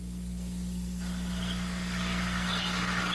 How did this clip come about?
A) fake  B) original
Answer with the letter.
A